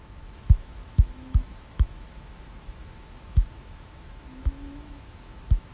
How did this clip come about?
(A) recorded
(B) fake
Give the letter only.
B